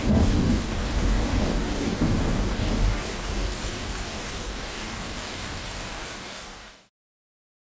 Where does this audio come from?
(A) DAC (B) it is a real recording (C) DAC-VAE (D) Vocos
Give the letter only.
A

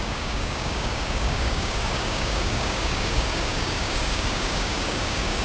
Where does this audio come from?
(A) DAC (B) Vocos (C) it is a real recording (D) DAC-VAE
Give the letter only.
A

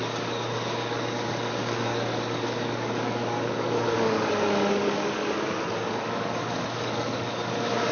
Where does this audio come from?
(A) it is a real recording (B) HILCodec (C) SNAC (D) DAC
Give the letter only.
D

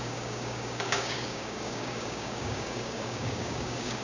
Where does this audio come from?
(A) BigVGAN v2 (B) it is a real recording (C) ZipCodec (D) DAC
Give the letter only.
D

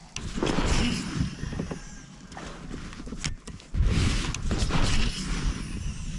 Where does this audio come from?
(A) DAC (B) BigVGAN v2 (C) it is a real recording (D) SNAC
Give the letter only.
C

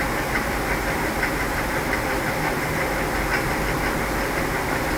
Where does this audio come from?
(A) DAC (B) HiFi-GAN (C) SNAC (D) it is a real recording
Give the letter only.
D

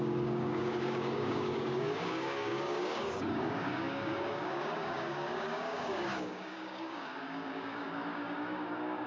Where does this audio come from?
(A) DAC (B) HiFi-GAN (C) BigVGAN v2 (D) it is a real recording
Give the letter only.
A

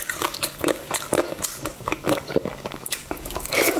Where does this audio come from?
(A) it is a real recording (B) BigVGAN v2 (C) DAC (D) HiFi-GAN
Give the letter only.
C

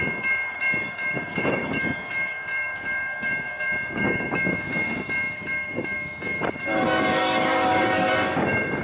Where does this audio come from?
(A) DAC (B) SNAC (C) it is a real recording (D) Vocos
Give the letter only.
A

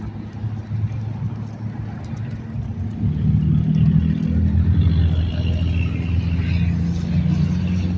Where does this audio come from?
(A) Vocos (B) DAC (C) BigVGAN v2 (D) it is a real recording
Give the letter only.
D